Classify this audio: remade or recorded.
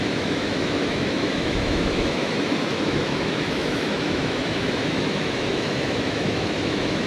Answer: remade